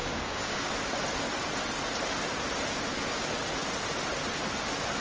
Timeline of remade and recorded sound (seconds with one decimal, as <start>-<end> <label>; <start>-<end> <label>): 0.0-0.7 remade; 0.7-5.0 recorded